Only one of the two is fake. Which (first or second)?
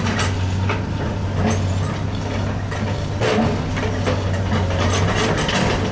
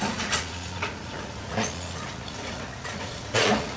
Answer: second